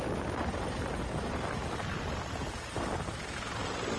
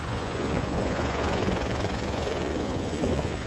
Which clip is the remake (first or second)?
second